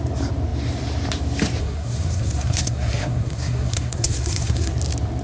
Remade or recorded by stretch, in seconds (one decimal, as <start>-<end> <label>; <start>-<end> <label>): 0.0-1.6 recorded; 1.6-4.7 remade; 4.7-5.2 recorded